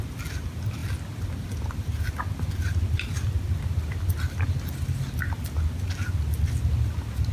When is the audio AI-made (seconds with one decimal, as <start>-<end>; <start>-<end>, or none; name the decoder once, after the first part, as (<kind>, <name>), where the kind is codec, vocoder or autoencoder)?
none

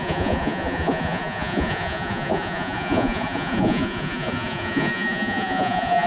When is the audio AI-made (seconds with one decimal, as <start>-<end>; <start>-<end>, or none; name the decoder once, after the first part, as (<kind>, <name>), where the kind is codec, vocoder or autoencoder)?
0.0-6.1 (vocoder, Vocos)

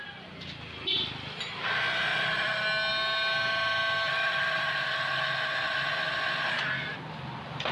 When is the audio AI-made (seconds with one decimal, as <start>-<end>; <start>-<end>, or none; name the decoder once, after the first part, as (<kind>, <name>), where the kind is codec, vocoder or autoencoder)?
none

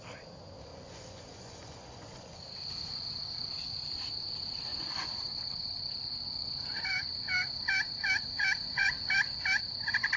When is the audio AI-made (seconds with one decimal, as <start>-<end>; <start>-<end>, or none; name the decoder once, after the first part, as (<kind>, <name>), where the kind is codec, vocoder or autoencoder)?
0.7-2.4 (vocoder, Vocos); 4.7-5.2; 6.3-6.9; 8.6-9.1

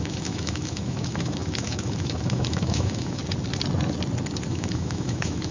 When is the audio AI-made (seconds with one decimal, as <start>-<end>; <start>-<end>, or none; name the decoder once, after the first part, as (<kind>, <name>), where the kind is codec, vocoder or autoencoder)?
0.0-3.2 (autoencoder, DAC-VAE); 4.5-5.5

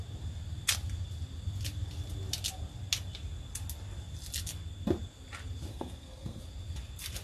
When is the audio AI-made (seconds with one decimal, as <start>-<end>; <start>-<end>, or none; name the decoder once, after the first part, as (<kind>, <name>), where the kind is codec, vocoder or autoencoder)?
5.7-6.4 (codec, SNAC)